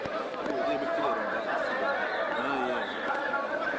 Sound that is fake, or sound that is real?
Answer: real